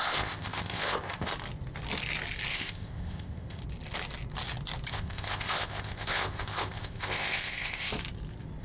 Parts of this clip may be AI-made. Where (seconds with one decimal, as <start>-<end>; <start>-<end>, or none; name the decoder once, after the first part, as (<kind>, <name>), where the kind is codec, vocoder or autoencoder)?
0.0-1.3 (codec, ZipCodec); 2.5-3.6; 4.9-7.9